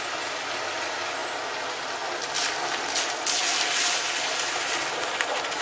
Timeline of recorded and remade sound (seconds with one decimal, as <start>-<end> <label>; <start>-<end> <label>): 0.0-5.6 recorded